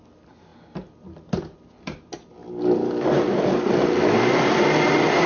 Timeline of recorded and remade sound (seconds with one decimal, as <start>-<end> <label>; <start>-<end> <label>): 0.0-5.3 recorded